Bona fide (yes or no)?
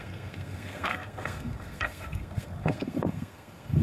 no